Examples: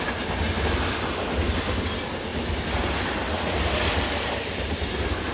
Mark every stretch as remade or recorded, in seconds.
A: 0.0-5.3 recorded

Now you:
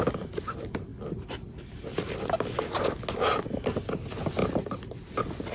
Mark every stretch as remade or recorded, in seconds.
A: 0.0-4.4 recorded; 4.4-5.5 remade

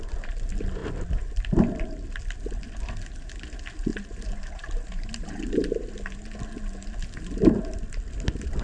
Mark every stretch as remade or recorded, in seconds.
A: 0.0-3.9 recorded; 3.9-5.9 remade; 5.9-8.6 recorded

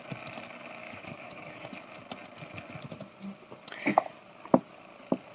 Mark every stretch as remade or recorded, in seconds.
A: 0.0-0.8 recorded; 0.8-1.7 remade; 1.7-5.3 recorded